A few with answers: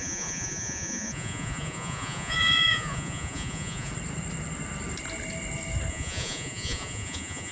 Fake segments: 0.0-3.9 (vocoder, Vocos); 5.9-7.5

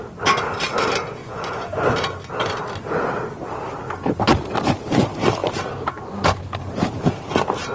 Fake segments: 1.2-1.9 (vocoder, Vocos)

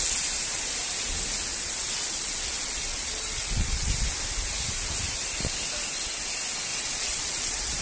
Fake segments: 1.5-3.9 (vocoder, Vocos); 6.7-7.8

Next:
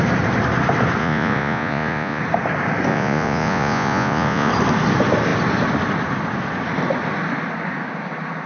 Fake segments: 1.0-2.2 (vocoder, Vocos); 2.9-4.5

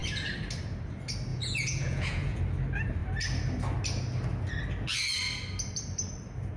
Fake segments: 1.3-2.4 (vocoder, Vocos)